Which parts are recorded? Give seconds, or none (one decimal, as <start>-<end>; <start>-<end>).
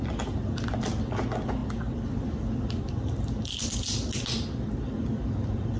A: 0.0-5.8